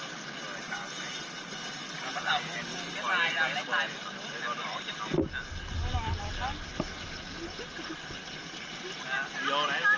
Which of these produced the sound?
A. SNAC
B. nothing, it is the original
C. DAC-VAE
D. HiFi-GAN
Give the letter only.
B